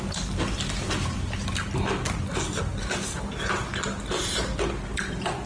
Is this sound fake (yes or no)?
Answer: no